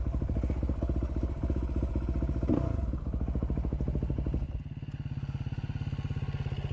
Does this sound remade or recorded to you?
recorded